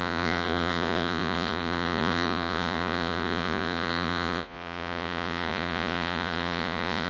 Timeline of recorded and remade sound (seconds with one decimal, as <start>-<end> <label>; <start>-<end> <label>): 0.0-7.1 remade